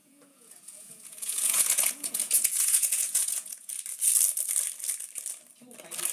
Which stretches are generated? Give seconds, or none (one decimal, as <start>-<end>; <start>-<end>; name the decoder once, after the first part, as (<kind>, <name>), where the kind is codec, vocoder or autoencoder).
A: 0.0-3.7 (vocoder, Vocos)